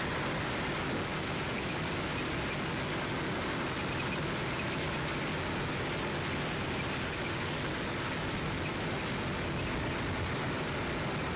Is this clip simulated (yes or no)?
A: no